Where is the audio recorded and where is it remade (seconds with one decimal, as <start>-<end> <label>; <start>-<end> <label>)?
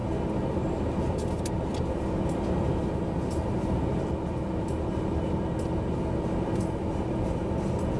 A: 0.0-8.0 recorded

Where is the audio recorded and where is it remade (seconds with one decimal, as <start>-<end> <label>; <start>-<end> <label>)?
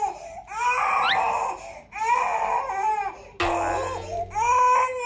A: 0.0-5.1 recorded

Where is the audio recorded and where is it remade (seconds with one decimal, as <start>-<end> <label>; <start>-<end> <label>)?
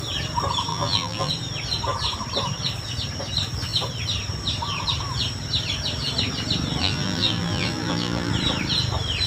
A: 0.0-0.7 recorded; 0.7-1.3 remade; 1.3-6.8 recorded; 6.8-8.3 remade; 8.3-9.3 recorded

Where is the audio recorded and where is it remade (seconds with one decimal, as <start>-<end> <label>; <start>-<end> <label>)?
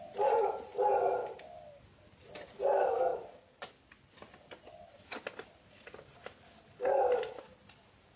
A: 0.0-1.2 remade; 1.2-1.8 recorded; 1.8-8.2 remade